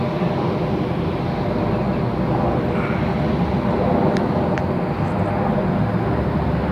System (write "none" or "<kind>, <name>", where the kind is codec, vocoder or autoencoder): none